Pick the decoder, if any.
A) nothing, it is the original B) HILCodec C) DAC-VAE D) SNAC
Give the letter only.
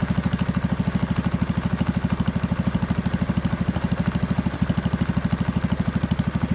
A